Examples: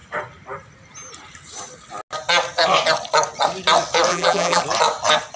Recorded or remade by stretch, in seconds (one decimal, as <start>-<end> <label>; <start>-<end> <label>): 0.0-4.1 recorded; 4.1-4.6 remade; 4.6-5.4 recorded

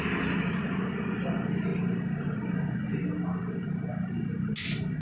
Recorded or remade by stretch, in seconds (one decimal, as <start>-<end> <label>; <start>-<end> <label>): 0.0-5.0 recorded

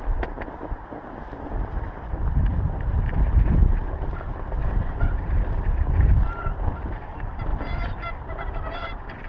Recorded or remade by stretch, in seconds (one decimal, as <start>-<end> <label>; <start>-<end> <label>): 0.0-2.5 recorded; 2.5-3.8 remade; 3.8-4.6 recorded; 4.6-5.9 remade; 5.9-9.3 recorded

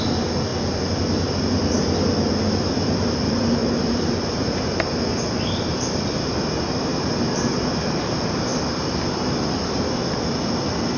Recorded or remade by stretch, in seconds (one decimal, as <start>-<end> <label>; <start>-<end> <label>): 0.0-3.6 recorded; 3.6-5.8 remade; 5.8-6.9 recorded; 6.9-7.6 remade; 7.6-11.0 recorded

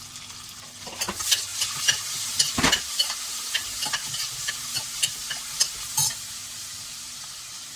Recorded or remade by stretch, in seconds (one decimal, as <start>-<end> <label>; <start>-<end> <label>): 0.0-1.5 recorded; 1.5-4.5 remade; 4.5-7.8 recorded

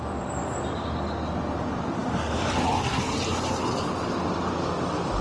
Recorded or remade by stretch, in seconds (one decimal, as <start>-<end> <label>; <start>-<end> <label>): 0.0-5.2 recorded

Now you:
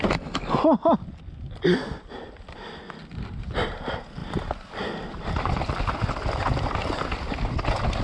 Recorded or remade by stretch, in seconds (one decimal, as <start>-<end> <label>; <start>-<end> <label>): 0.0-4.2 recorded; 4.2-6.0 remade; 6.0-8.0 recorded

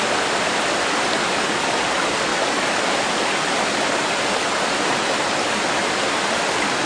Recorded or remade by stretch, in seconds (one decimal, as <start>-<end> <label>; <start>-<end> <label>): 0.0-2.3 remade; 2.3-3.0 recorded; 3.0-6.9 remade